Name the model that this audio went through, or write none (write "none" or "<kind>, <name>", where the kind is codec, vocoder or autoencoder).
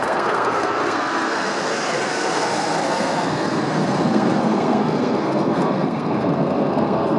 codec, SNAC